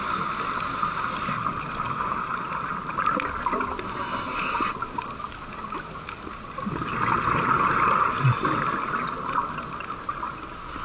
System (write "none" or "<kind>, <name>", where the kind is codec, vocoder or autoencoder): none